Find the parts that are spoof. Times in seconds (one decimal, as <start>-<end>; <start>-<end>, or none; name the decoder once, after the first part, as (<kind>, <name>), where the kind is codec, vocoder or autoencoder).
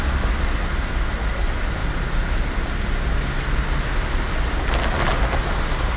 none